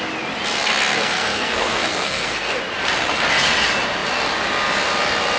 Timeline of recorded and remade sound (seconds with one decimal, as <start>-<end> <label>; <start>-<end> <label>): 0.0-0.9 recorded; 0.9-2.6 remade; 2.6-5.4 recorded